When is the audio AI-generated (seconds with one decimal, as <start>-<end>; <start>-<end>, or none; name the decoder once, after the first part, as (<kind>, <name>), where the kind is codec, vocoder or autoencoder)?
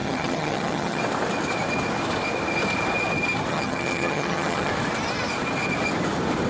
0.0-1.0 (vocoder, HiFi-GAN); 3.5-4.7